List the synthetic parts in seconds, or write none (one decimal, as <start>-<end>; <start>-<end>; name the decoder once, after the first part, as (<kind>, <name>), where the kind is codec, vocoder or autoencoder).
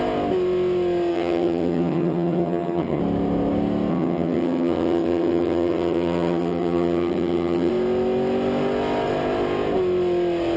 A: 1.1-3.0 (vocoder, HiFi-GAN); 3.9-7.7